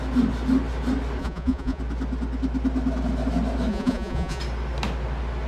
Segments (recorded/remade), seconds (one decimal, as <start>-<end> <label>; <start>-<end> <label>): 0.0-1.2 recorded; 1.2-1.8 remade; 1.8-3.7 recorded; 3.7-4.4 remade; 4.4-5.5 recorded